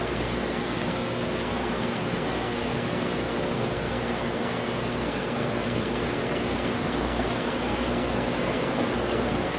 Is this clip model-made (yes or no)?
yes